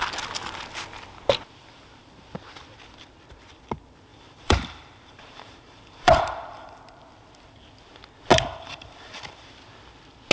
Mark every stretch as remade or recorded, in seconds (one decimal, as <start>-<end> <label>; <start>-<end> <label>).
0.0-4.1 recorded; 4.1-6.8 remade; 6.8-8.3 recorded; 8.3-9.5 remade; 9.5-10.3 recorded